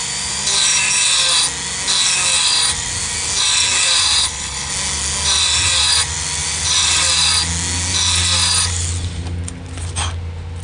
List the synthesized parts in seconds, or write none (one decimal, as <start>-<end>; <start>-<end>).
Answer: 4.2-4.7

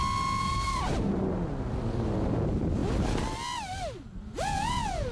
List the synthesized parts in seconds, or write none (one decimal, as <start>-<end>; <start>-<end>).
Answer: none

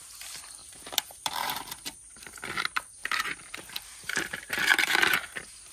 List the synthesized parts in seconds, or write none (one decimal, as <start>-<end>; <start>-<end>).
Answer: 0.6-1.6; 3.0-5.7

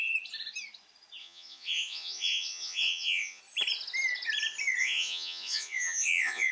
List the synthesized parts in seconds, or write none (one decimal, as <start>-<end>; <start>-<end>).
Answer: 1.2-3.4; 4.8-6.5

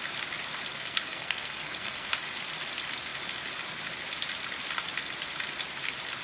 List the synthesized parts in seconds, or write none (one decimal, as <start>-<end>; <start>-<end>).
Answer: 0.7-2.1

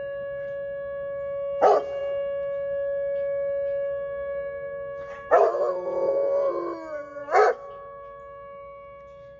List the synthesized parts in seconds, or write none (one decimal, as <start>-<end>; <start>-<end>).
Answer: none

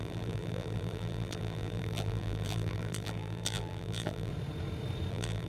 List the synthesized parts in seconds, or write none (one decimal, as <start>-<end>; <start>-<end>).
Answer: 0.0-4.3; 5.1-5.5

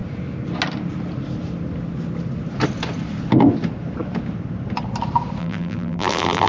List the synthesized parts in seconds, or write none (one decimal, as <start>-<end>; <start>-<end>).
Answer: 5.4-6.5